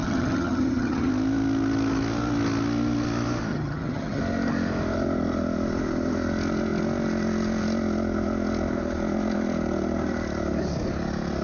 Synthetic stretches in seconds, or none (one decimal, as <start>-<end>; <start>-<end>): 0.0-1.1; 3.5-4.2